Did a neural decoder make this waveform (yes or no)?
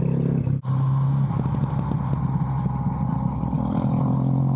no